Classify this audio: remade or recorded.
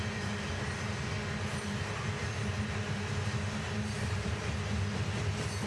recorded